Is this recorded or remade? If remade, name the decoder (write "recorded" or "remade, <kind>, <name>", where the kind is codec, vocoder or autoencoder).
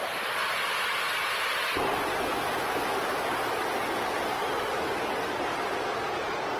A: recorded